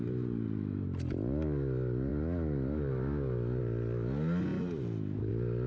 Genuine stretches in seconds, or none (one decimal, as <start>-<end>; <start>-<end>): 0.0-5.7